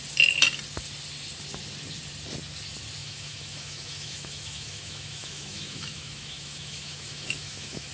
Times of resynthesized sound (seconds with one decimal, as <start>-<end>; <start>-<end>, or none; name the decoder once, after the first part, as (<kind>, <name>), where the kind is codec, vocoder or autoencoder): 3.0-7.9 (autoencoder, DAC-VAE)

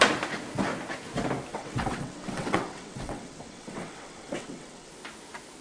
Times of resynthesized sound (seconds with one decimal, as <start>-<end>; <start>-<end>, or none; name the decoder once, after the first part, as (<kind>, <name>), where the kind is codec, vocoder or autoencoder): 1.5-4.9 (vocoder, WaveNeXt)